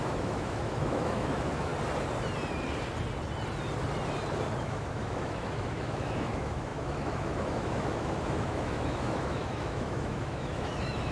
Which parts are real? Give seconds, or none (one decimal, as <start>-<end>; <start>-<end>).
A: 1.7-4.6